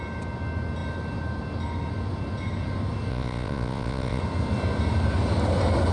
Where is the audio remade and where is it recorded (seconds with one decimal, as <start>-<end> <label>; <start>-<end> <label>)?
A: 0.0-3.1 recorded; 3.1-4.2 remade; 4.2-5.9 recorded